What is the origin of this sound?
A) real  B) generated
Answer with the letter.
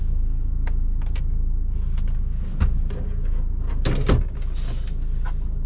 A